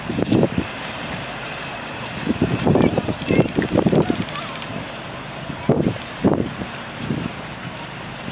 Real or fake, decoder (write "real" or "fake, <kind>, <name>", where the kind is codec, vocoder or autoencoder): fake, vocoder, BigVGAN v2